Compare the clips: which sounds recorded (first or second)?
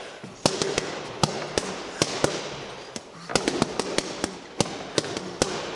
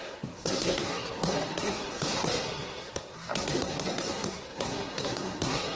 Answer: first